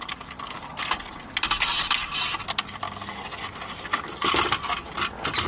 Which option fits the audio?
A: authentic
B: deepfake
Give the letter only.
A